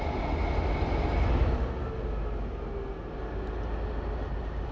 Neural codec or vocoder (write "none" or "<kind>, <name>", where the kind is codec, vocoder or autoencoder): none